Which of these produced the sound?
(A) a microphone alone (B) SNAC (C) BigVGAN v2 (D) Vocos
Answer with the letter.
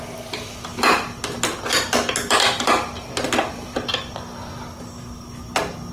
A